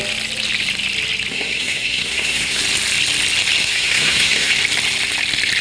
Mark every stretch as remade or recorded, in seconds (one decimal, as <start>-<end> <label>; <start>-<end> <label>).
0.0-1.3 recorded; 1.3-2.6 remade; 2.6-3.6 recorded; 3.6-4.5 remade; 4.5-5.6 recorded